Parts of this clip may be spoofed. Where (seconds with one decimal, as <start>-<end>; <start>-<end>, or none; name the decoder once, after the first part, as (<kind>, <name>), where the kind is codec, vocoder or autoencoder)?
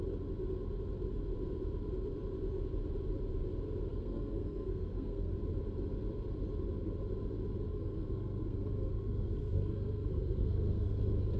3.9-5.3 (codec, SNAC); 7.7-11.0